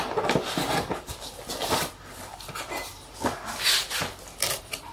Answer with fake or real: real